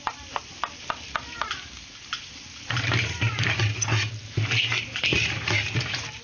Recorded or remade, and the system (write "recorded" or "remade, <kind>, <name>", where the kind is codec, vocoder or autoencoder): recorded